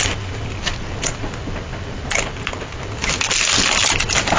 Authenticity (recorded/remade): recorded